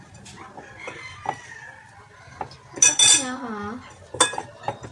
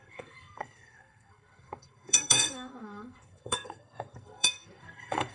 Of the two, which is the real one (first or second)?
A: first